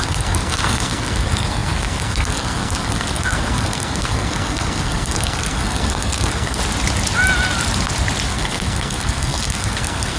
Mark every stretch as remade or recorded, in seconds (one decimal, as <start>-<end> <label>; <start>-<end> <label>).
0.0-6.6 remade; 6.6-8.3 recorded; 8.3-10.2 remade